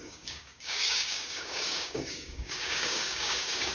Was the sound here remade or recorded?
remade